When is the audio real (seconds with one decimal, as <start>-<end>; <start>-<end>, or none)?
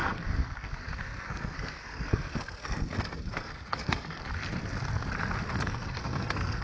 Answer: 4.3-5.6